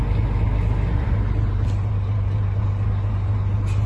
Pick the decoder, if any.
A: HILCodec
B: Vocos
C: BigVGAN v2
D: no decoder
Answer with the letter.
D